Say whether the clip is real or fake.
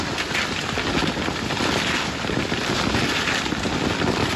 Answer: real